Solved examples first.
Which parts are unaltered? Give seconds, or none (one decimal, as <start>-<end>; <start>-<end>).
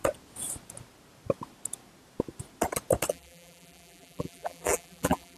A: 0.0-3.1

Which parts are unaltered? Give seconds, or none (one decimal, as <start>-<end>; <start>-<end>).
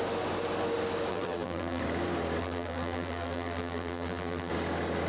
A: 0.0-1.1; 1.8-2.4; 4.5-5.1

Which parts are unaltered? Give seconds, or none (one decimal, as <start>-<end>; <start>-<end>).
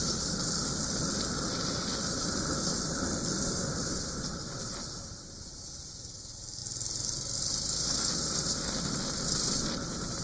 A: 4.7-10.2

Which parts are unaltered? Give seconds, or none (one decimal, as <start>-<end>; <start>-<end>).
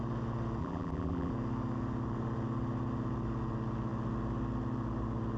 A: 0.0-0.6; 1.3-5.4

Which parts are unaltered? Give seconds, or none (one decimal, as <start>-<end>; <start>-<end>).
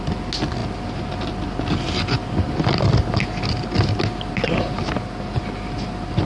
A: 0.0-6.2